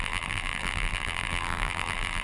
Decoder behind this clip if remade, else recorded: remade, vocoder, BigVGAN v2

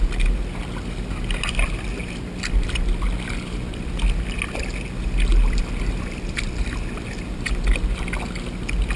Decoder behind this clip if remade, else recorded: recorded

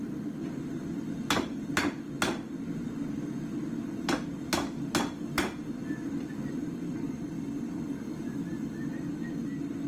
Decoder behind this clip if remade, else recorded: recorded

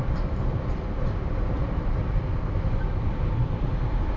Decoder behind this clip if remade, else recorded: remade, vocoder, BigVGAN v2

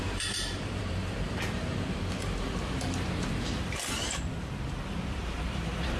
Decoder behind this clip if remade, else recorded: remade, vocoder, BigVGAN v2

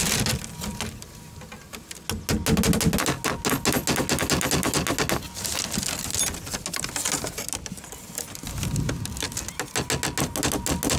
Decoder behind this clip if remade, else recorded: recorded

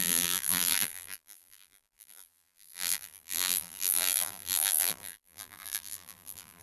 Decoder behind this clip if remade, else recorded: remade, vocoder, BigVGAN v2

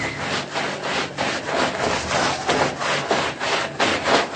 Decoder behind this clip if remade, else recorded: recorded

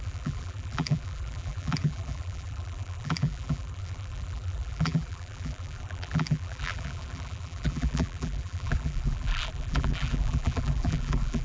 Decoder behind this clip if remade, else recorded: remade, vocoder, BigVGAN v2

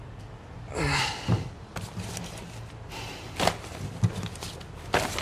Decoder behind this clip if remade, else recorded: recorded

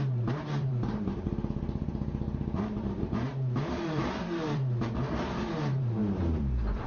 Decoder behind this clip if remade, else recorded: remade, vocoder, BigVGAN v2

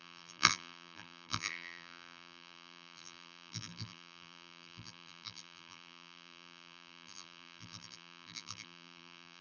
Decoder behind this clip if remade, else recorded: remade, vocoder, BigVGAN v2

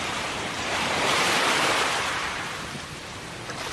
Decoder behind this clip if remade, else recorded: remade, vocoder, BigVGAN v2